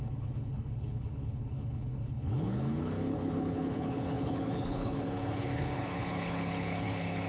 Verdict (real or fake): fake